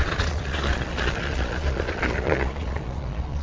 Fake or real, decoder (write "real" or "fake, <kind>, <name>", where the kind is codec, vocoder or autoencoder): fake, vocoder, Vocos